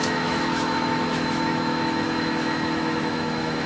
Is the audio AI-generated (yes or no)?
yes